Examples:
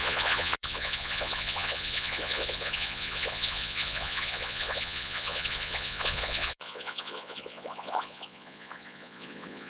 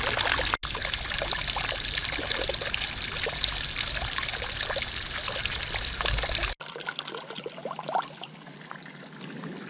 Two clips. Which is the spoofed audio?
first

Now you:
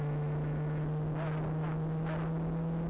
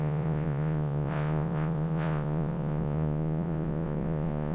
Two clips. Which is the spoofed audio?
second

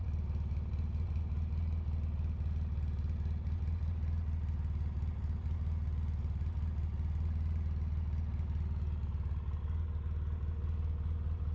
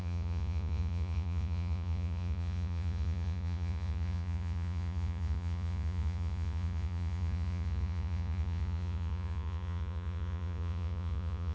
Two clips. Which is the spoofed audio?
second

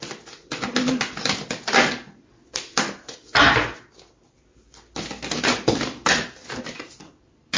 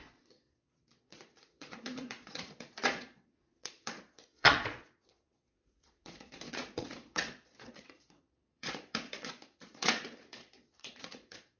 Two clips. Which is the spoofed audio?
second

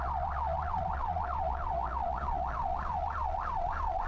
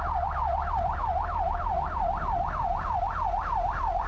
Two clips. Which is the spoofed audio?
first